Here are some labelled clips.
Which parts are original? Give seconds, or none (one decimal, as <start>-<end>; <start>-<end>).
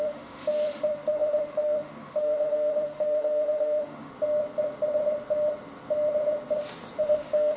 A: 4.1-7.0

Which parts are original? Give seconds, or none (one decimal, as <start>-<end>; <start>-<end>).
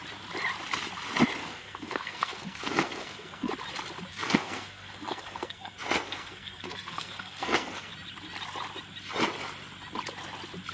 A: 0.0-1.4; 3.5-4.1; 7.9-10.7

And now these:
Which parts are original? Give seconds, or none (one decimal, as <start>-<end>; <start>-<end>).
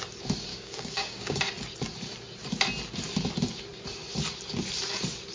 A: 0.0-0.5; 1.4-5.3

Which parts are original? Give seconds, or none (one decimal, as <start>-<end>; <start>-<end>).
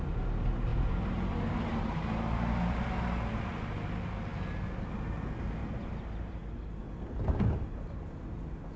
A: 0.0-0.7; 3.4-5.6; 6.8-8.8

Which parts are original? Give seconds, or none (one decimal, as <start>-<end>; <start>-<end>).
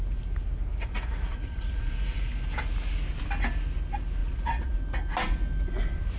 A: 0.0-0.7; 2.3-4.2; 4.8-6.2